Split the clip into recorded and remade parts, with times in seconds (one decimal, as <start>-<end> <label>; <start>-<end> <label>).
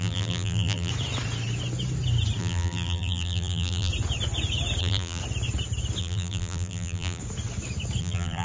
0.0-0.9 remade; 0.9-2.4 recorded; 2.4-3.9 remade; 3.9-4.8 recorded; 4.8-5.2 remade; 5.2-6.0 recorded; 6.0-7.2 remade; 7.2-8.0 recorded; 8.0-8.4 remade